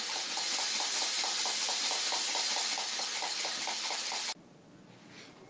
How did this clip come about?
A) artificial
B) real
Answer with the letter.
B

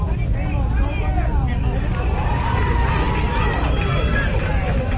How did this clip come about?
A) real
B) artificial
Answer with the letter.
A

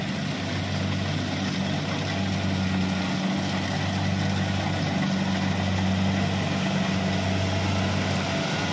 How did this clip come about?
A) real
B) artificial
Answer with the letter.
A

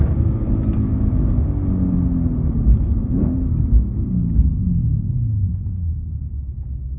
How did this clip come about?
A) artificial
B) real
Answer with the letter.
B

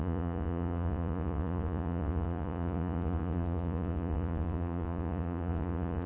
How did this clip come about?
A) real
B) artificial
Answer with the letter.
B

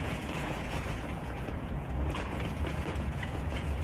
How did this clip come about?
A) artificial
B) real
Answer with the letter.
A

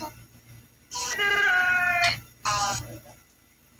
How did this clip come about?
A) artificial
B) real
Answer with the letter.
B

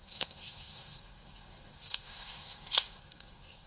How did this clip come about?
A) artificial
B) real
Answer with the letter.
A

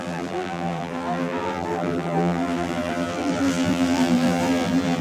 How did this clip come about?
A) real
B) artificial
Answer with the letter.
B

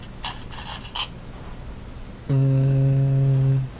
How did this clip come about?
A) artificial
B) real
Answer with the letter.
B